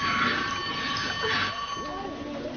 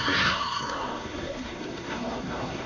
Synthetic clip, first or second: second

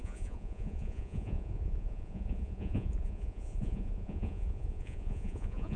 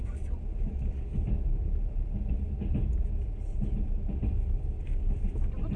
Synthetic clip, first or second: first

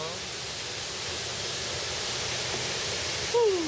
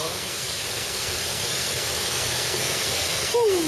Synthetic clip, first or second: second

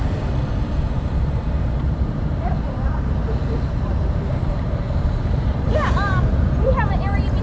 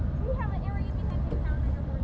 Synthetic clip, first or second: first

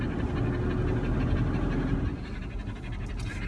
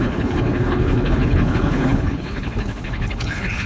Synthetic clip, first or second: second